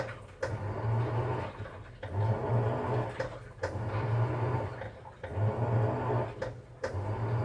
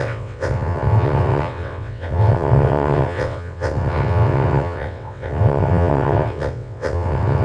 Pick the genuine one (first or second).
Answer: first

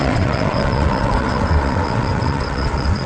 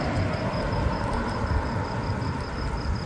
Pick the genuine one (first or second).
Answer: second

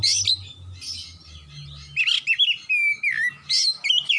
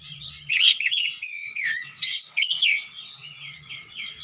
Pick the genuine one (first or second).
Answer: first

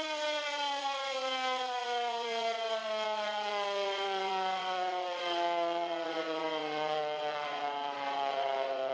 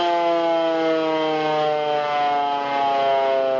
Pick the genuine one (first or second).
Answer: second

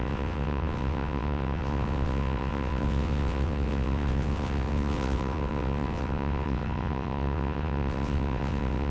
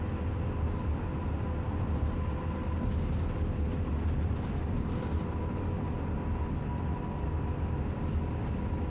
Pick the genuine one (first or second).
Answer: second